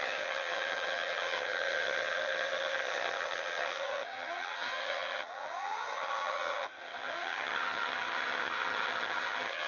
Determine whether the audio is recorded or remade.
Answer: remade